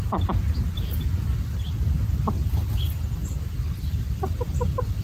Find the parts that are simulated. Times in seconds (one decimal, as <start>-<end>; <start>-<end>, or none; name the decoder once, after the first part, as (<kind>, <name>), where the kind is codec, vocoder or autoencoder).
none